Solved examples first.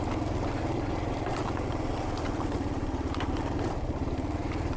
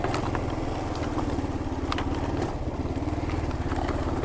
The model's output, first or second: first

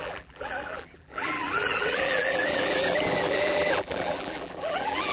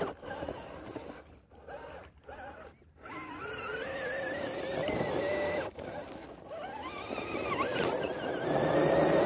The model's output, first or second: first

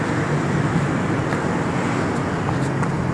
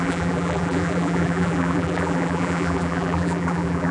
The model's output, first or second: second